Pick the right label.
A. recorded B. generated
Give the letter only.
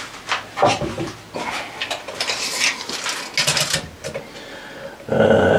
A